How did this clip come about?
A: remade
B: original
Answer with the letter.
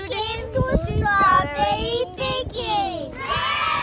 B